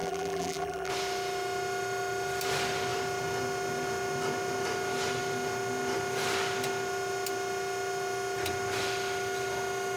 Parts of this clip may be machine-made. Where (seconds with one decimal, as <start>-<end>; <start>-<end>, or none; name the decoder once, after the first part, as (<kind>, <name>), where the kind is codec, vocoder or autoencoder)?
0.0-0.9 (vocoder, BigVGAN v2)